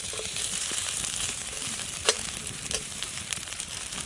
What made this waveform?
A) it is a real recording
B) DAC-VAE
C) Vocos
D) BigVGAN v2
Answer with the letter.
D